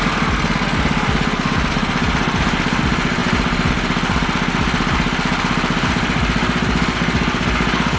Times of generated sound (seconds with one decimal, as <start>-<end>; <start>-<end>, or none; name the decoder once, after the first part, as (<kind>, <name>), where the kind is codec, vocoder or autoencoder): none